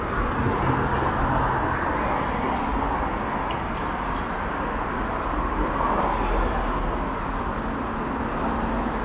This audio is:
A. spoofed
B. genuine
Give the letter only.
B